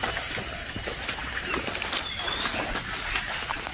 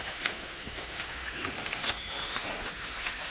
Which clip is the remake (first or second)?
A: second